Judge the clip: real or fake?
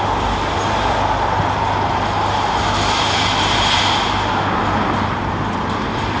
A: real